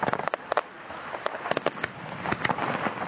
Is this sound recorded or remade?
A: recorded